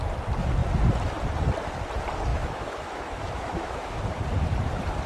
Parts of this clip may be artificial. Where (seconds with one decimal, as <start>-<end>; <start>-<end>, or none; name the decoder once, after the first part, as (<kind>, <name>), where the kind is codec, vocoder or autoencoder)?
2.3-4.0 (autoencoder, DAC-VAE)